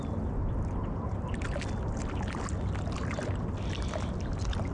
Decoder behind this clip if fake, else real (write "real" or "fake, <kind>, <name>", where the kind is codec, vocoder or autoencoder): real